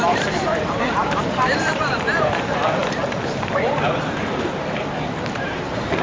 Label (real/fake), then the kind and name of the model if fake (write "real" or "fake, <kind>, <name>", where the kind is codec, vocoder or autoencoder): fake, vocoder, BigVGAN v2